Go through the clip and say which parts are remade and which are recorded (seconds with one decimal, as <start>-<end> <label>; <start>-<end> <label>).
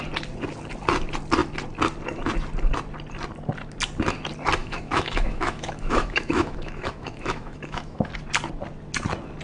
0.0-4.6 recorded; 4.6-8.1 remade; 8.1-9.4 recorded